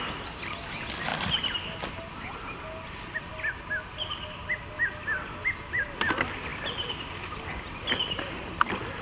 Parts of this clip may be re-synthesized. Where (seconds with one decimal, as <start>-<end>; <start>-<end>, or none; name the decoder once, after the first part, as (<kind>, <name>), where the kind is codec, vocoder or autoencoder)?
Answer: none